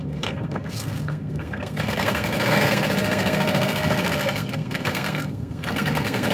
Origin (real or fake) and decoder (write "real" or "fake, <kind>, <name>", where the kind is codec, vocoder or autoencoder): fake, codec, SNAC